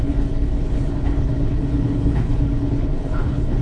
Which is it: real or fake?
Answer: fake